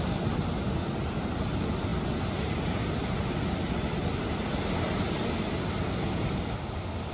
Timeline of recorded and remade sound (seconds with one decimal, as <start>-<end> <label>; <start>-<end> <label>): 0.0-7.1 recorded